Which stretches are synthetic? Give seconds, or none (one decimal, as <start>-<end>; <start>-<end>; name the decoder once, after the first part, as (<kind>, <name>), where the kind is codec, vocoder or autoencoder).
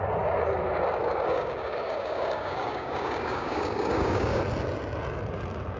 1.0-4.4 (codec, DAC)